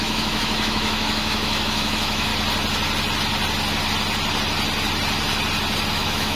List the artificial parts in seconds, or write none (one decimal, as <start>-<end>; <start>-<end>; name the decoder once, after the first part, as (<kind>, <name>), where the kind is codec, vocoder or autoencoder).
0.0-2.3 (autoencoder, DAC-VAE); 5.9-6.4